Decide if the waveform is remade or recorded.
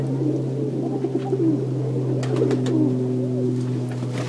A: recorded